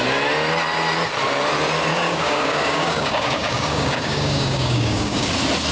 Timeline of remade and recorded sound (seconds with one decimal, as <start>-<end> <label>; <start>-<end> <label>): 0.0-1.9 recorded; 1.9-5.3 remade; 5.3-5.7 recorded